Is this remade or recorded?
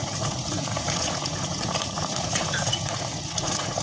remade